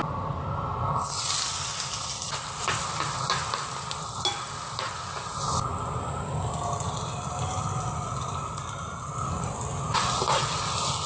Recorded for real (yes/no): yes